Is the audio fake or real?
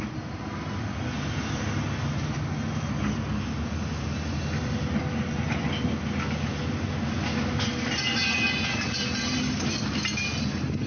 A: real